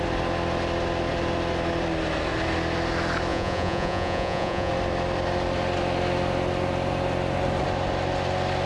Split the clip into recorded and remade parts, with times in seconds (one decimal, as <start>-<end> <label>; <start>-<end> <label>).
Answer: 0.0-3.3 recorded; 3.3-4.7 remade; 4.7-8.7 recorded